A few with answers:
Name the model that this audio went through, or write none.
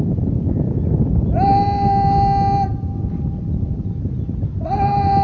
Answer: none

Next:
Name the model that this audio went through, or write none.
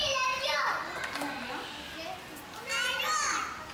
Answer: none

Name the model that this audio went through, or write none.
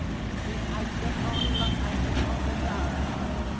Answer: vocoder, BigVGAN v2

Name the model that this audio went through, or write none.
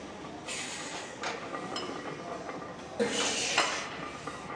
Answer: none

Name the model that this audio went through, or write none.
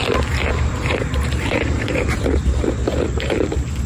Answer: vocoder, BigVGAN v2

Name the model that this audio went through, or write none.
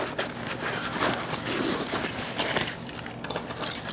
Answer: none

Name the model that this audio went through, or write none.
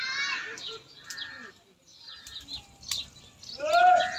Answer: none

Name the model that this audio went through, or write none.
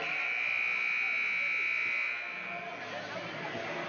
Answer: none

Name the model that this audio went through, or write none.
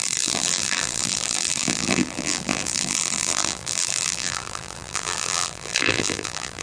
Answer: vocoder, BigVGAN v2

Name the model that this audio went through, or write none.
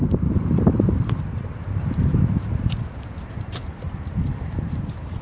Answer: vocoder, BigVGAN v2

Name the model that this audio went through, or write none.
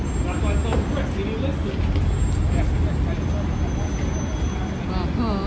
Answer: none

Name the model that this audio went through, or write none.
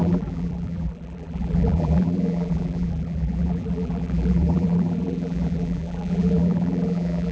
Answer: vocoder, BigVGAN v2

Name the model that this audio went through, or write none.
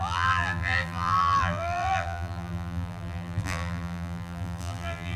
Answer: vocoder, BigVGAN v2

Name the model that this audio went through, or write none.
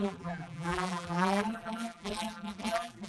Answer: vocoder, BigVGAN v2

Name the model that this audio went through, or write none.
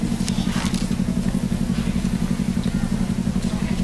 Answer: none